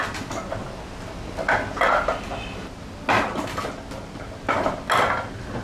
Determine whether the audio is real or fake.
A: real